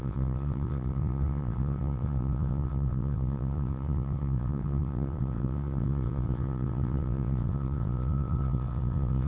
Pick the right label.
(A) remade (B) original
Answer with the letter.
A